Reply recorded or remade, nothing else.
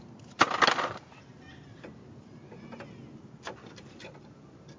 recorded